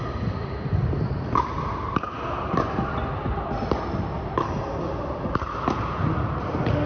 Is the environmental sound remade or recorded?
recorded